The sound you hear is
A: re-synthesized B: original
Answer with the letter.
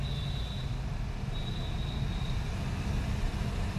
B